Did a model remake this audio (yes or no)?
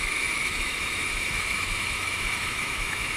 yes